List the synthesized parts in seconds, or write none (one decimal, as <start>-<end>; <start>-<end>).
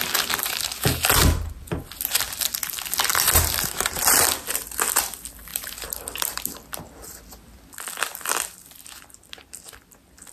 3.1-3.7; 5.5-6.8